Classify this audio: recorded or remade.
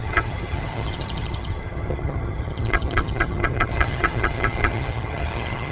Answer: remade